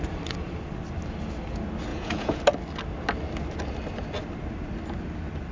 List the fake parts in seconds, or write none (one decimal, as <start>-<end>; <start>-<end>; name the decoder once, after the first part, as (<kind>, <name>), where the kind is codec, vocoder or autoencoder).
1.9-2.4 (vocoder, Vocos)